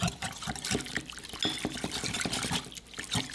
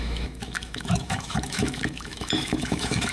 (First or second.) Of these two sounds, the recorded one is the first